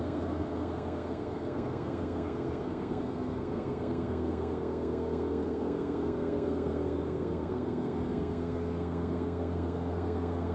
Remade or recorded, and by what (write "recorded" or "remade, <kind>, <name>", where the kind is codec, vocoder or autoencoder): remade, codec, SNAC